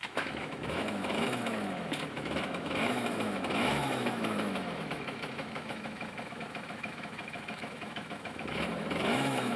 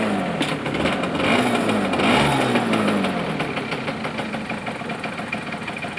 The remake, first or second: first